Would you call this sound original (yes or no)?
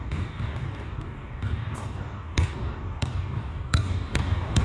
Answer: no